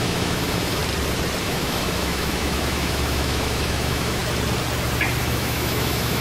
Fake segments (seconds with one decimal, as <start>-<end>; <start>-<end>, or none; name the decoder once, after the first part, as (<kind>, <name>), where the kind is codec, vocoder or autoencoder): 0.0-0.8 (autoencoder, DAC-VAE); 1.4-4.2; 5.2-6.2